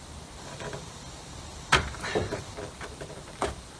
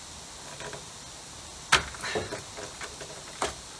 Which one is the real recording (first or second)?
second